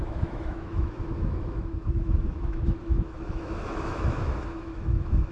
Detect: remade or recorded remade